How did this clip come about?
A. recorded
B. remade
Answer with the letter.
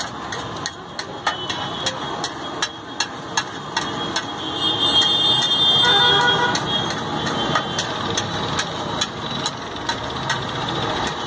A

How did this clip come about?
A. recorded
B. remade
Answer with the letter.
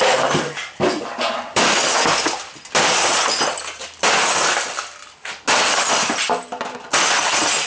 A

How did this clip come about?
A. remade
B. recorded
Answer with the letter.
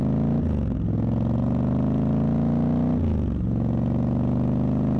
B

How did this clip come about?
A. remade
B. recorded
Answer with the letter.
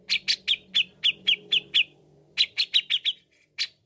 B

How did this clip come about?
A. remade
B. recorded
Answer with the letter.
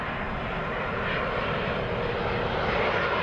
B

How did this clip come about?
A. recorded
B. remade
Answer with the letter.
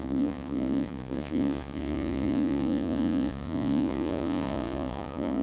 B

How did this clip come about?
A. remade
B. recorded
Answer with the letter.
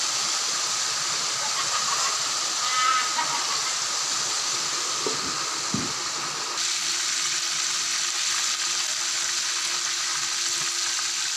B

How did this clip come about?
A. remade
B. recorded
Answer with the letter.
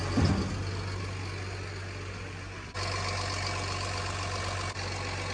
B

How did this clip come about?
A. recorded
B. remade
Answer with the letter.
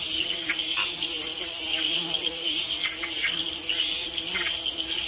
A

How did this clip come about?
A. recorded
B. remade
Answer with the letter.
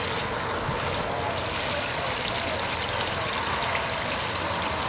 A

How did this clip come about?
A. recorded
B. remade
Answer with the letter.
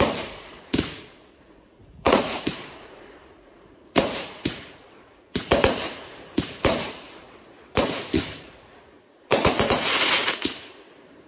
B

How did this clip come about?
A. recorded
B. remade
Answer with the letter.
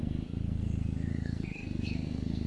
B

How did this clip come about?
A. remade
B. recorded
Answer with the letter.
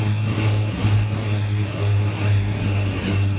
A